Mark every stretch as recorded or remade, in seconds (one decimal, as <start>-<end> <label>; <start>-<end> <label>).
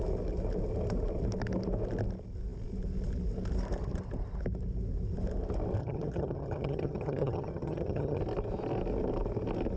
0.0-5.8 recorded; 5.8-8.2 remade; 8.2-9.8 recorded